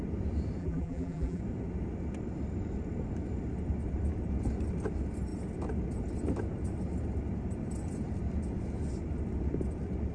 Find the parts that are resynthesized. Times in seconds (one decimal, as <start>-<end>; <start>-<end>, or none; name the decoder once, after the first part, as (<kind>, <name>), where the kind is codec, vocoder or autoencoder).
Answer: 0.6-1.4 (vocoder, BigVGAN v2)

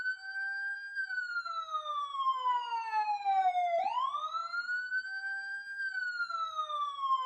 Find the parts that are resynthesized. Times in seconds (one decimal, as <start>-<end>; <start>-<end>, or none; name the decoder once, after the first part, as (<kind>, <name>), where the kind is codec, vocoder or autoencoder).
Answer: 0.7-3.7 (vocoder, BigVGAN v2); 4.4-5.8